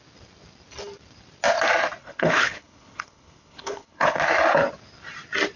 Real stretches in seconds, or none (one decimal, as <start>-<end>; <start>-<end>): 0.0-2.0; 4.2-5.6